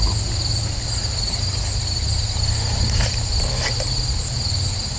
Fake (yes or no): no